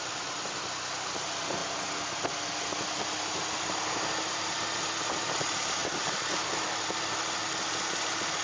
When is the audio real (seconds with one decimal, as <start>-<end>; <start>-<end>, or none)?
0.0-8.4